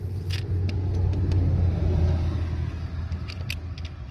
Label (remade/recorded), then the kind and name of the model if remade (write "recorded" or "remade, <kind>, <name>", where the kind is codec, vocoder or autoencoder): recorded